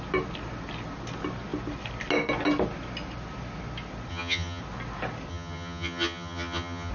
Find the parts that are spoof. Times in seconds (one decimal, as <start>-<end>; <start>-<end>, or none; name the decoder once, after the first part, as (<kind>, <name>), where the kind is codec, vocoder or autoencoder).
4.1-4.6 (vocoder, HiFi-GAN); 5.3-6.9